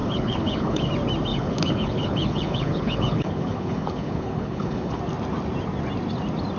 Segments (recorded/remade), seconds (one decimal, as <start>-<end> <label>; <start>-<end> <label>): 0.0-0.9 remade; 0.9-1.3 recorded; 1.3-5.0 remade; 5.0-6.6 recorded